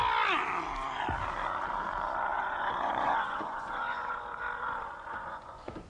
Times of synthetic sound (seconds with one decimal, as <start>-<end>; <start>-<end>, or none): 2.3-5.9